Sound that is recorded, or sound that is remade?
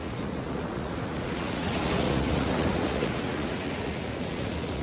remade